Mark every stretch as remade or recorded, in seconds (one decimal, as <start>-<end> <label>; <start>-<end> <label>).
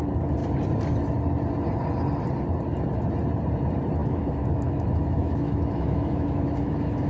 0.0-4.0 recorded; 4.0-7.1 remade